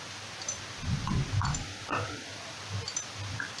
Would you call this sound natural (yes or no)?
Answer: yes